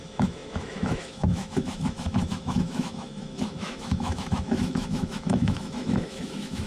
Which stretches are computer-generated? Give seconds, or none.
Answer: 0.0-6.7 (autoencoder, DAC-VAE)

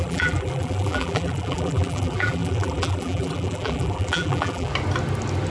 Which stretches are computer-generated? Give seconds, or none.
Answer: 0.0-4.7 (vocoder, BigVGAN v2)